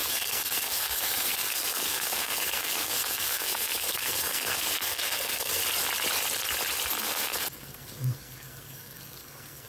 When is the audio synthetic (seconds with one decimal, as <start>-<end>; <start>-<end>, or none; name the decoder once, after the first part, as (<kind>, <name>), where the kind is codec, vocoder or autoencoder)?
0.0-5.6 (codec, SNAC); 7.0-9.7